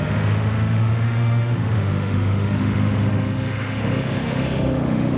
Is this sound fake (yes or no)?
yes